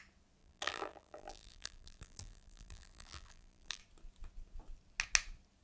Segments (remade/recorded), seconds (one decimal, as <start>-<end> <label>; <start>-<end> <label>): 0.0-0.4 recorded; 0.4-3.8 remade; 3.8-5.6 recorded